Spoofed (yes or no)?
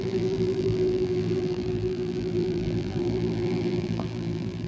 yes